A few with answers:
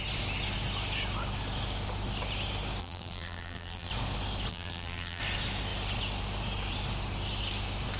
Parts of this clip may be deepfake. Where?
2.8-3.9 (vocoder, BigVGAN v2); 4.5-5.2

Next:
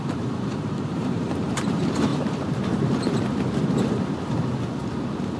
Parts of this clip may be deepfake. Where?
0.0-2.1 (vocoder, BigVGAN v2)

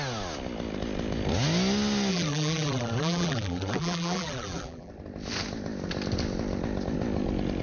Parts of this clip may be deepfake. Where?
2.1-4.9 (vocoder, BigVGAN v2)

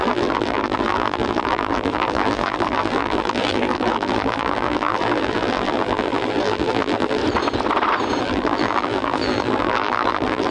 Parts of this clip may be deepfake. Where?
0.0-7.2 (vocoder, BigVGAN v2); 8.2-10.5